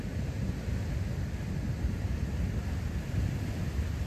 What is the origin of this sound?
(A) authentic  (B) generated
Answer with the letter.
A